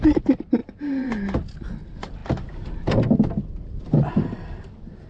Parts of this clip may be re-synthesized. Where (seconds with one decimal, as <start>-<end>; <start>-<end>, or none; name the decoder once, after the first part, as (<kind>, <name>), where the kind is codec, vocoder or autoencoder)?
0.6-1.1 (vocoder, Vocos)